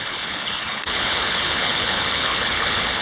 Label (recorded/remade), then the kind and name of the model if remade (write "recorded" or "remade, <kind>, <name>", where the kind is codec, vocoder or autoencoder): remade, codec, HILCodec